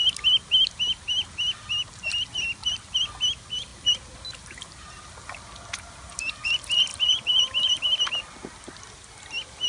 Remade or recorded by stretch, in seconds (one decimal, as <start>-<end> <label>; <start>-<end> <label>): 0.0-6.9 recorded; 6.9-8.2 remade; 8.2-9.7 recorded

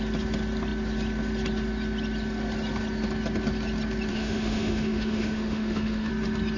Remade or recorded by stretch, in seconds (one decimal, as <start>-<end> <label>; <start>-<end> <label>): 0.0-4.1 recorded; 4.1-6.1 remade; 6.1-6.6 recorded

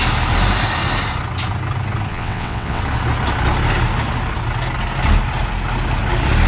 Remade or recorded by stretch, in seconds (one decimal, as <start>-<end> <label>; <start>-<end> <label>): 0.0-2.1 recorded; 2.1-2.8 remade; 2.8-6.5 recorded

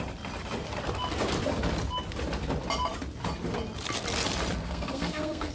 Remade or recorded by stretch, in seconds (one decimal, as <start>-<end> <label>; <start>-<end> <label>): 0.0-4.6 recorded; 4.6-5.5 remade